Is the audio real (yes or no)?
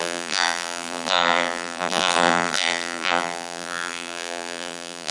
no